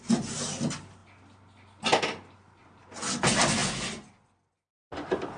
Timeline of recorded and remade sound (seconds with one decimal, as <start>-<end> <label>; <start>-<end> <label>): 0.0-5.4 recorded